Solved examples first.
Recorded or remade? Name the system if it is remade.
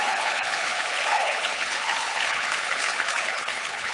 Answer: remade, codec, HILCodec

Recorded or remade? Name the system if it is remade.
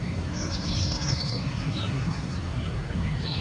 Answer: remade, codec, SNAC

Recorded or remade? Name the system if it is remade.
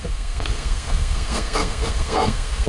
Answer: remade, codec, SNAC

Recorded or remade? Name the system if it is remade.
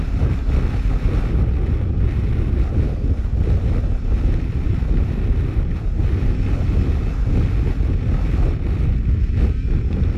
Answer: recorded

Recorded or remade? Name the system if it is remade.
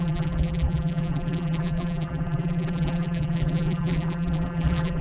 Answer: remade, vocoder, BigVGAN v2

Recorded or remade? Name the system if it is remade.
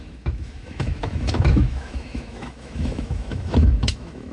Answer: remade, autoencoder, DAC-VAE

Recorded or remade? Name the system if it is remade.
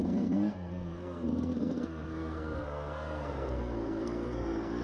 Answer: remade, codec, SNAC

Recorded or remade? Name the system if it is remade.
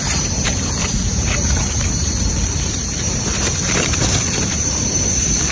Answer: remade, vocoder, BigVGAN v2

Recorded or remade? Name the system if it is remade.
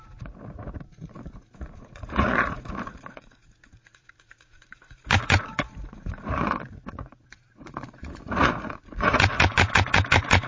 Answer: remade, vocoder, Vocos